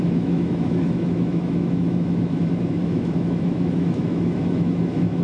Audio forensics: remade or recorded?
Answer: remade